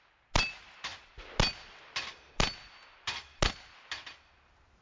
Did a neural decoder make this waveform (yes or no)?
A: no